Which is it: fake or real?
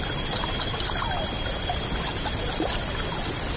real